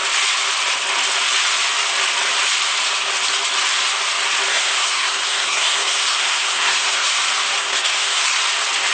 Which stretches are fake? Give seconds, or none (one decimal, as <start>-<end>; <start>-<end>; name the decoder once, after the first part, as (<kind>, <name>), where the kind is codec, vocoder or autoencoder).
4.5-7.1 (codec, SNAC); 7.6-8.4